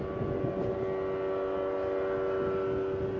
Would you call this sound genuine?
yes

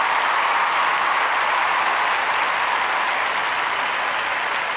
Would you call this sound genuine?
yes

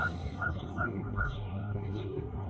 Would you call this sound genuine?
no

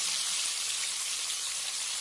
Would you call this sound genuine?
yes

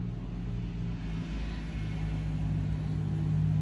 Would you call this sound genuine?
yes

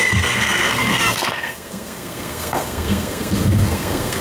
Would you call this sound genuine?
no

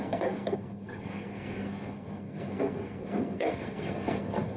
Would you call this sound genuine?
no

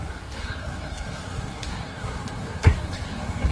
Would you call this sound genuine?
no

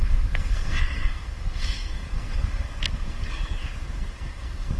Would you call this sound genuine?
no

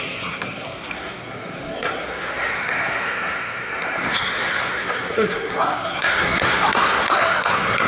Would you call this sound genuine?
no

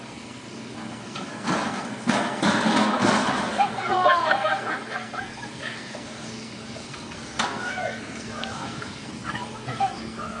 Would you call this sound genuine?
no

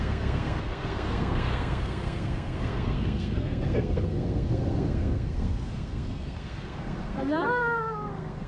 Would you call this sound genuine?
no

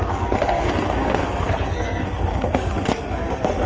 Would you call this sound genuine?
no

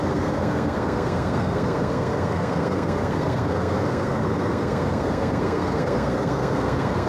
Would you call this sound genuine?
no